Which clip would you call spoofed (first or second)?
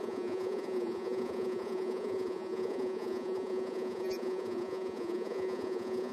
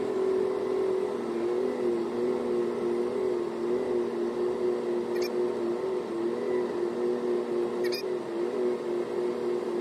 first